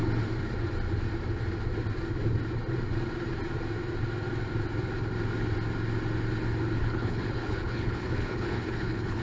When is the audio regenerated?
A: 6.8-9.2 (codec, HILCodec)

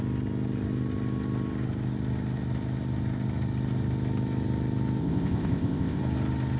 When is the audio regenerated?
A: 5.0-6.0 (codec, ZipCodec)